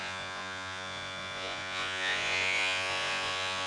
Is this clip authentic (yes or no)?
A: no